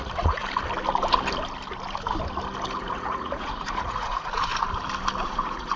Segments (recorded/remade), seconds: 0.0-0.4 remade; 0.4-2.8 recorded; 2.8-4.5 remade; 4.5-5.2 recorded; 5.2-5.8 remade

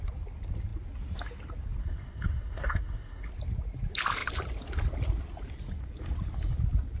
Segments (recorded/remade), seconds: 0.0-1.8 recorded; 1.8-3.3 remade; 3.3-7.0 recorded

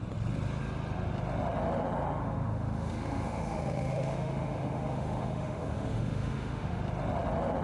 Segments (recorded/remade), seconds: 0.0-2.2 recorded; 2.2-6.8 remade; 6.8-7.6 recorded